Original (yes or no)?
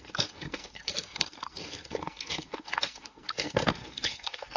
no